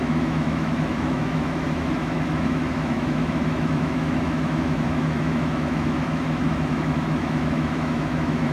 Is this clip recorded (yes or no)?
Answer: no